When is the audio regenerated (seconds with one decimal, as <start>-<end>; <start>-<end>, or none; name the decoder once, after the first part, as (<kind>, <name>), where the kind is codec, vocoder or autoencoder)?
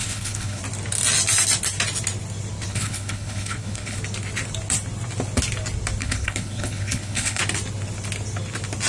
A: 0.0-0.6 (codec, HILCodec); 2.7-4.0; 6.0-7.4